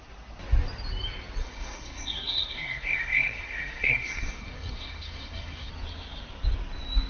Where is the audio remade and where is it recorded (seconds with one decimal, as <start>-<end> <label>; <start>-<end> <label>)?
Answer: 0.0-1.4 recorded; 1.4-5.7 remade; 5.7-7.1 recorded